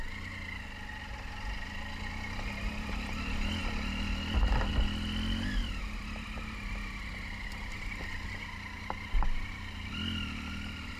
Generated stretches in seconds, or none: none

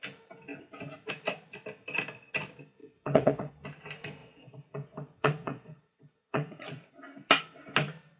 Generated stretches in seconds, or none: 2.8-3.5 (vocoder, Vocos); 4.2-6.9

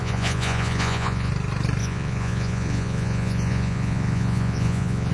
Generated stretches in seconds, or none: 0.0-1.3 (vocoder, Vocos); 1.8-5.1

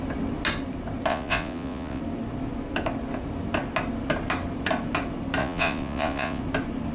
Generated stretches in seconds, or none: 1.1-2.0 (vocoder, Vocos); 5.4-6.4